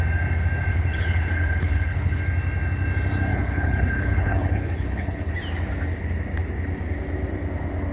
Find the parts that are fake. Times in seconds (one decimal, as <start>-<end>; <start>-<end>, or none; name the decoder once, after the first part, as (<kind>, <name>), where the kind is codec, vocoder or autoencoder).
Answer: 0.7-2.2 (codec, HILCodec); 3.3-5.3